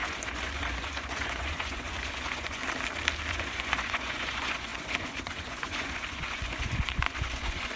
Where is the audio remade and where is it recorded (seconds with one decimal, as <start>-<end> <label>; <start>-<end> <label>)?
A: 0.0-2.6 remade; 2.6-3.3 recorded; 3.3-7.8 remade